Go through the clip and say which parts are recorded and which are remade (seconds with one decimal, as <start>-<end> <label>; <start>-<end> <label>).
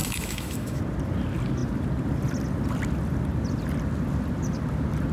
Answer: 0.0-0.8 remade; 0.8-5.1 recorded